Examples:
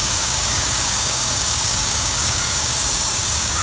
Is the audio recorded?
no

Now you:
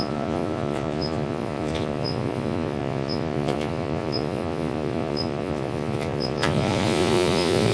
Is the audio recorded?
no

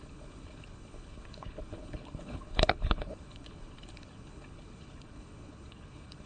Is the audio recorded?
no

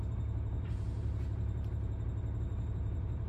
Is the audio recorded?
no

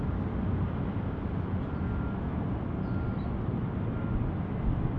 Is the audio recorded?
yes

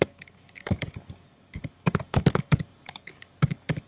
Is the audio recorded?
no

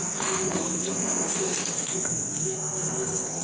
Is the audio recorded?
no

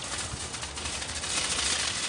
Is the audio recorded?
yes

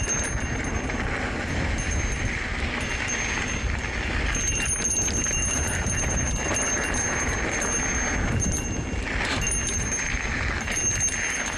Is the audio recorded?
yes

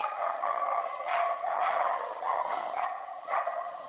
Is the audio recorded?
no